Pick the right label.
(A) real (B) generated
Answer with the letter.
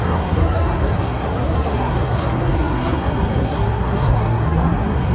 B